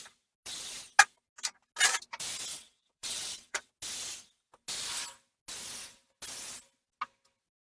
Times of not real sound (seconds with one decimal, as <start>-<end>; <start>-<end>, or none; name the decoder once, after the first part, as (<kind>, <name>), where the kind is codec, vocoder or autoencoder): 2.5-3.7 (vocoder, WaveNeXt)